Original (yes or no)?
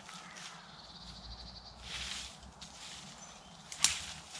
yes